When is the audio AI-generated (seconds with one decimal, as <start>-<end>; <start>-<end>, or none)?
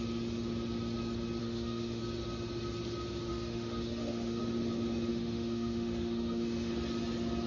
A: 1.4-2.0; 3.3-4.4; 5.1-6.7